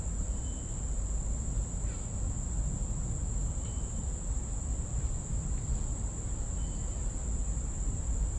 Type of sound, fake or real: real